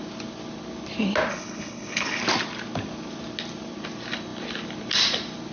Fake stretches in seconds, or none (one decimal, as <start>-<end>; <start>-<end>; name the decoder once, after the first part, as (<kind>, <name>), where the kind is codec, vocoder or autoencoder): 1.3-2.2 (codec, HILCodec)